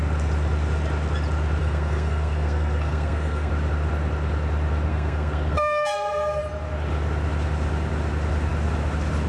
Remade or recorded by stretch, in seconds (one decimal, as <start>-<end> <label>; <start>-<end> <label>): 0.0-1.6 recorded; 1.6-3.5 remade; 3.5-4.9 recorded; 4.9-6.4 remade; 6.4-9.3 recorded